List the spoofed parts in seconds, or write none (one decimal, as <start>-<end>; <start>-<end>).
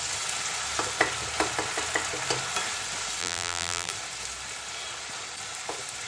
3.2-3.9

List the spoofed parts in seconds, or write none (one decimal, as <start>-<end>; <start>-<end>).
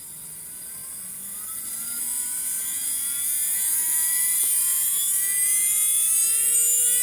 none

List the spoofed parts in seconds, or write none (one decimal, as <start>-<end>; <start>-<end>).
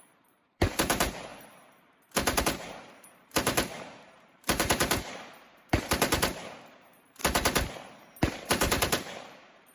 0.0-1.3; 2.4-7.2; 7.7-9.7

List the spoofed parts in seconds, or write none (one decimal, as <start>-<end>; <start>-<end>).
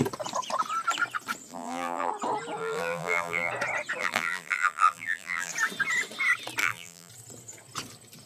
1.5-2.1; 2.6-3.5; 4.0-5.5; 6.6-7.1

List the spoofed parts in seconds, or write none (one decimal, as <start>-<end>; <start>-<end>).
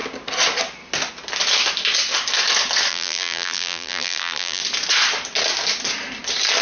2.9-4.6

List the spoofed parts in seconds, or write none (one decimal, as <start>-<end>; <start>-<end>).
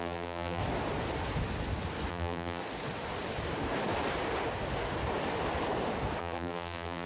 0.0-0.6; 2.1-2.6; 6.2-7.1